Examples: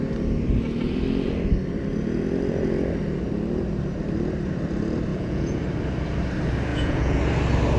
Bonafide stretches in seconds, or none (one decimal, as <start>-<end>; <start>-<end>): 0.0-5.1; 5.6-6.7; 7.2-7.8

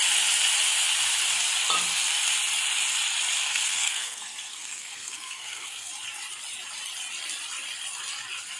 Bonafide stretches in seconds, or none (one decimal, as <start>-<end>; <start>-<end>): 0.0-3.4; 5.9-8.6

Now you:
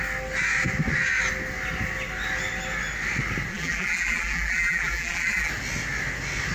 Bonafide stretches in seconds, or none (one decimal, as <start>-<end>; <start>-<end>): 0.0-3.5; 5.5-6.5